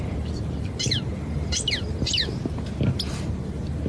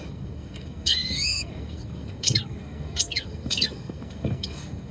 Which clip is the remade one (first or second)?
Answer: second